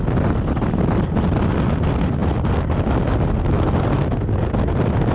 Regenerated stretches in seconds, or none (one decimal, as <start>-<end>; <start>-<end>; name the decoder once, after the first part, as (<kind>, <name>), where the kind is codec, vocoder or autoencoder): none